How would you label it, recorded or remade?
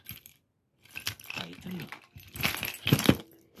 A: recorded